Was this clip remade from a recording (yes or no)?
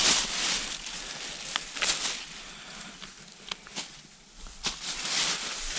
no